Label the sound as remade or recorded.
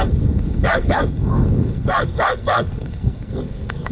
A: remade